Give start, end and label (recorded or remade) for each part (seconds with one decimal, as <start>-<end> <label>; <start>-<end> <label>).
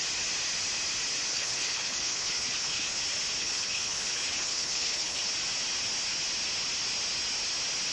0.0-1.3 recorded; 1.3-3.0 remade; 3.0-3.4 recorded; 3.4-5.3 remade; 5.3-7.9 recorded